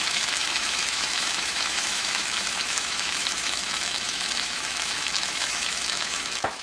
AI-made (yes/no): yes